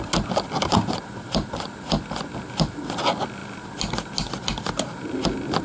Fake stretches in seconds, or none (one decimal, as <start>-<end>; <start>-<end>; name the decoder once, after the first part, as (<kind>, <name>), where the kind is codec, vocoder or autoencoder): none